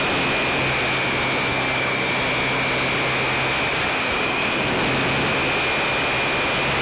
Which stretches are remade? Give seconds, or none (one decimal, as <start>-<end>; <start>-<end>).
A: 1.5-2.1; 3.7-4.8